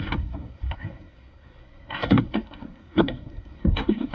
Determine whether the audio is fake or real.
fake